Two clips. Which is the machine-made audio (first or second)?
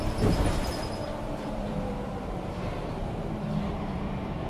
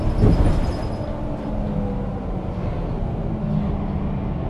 first